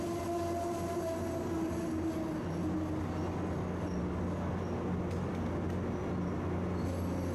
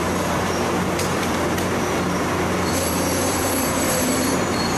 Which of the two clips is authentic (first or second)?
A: first